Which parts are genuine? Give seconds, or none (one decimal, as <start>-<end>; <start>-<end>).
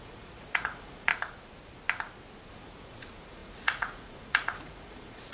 1.1-2.5